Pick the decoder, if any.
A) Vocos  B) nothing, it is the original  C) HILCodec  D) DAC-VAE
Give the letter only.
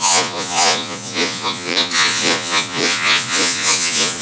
A